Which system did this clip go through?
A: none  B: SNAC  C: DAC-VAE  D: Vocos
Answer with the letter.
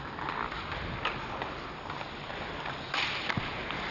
A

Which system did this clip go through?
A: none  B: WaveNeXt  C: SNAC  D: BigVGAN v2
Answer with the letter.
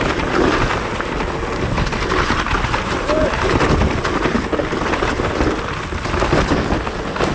A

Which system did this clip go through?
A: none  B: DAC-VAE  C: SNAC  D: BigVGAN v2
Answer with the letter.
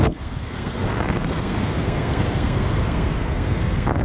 C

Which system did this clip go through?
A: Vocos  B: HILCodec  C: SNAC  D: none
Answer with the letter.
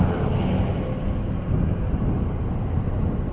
D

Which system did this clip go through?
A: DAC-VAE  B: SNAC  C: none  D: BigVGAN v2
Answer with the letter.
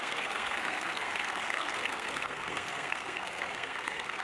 B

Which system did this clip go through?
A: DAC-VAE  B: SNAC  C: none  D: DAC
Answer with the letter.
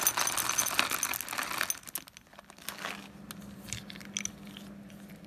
C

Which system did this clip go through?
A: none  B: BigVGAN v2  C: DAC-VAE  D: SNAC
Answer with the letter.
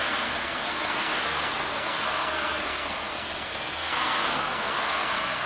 D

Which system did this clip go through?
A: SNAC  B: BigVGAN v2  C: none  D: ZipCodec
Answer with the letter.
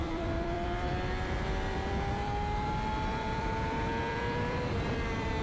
B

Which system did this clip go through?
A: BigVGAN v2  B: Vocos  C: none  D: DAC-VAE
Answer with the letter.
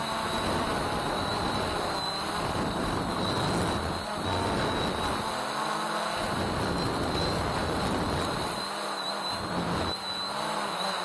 C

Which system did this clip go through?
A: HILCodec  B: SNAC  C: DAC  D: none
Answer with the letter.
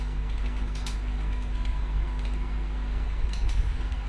B